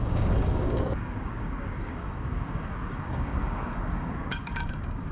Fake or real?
fake